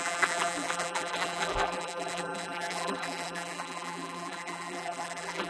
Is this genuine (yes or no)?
no